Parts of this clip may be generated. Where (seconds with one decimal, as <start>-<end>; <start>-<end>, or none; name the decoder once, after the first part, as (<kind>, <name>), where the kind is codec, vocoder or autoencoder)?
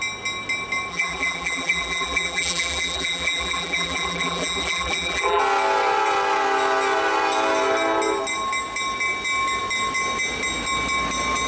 0.9-5.4 (vocoder, BigVGAN v2)